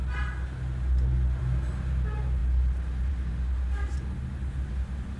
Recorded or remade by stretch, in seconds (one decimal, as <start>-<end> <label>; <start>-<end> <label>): 0.0-5.2 recorded